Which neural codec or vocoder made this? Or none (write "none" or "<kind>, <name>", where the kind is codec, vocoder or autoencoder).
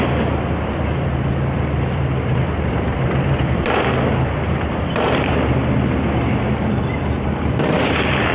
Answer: vocoder, BigVGAN v2